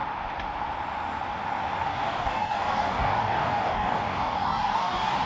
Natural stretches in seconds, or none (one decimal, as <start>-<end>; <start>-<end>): 0.0-1.9